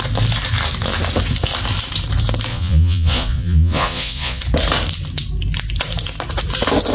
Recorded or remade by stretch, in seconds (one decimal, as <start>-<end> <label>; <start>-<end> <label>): 0.0-2.5 recorded; 2.5-4.4 remade; 4.4-6.9 recorded